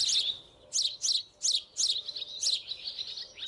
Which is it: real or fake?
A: real